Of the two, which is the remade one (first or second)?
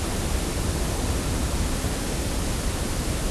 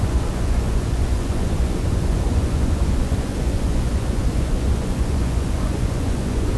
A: second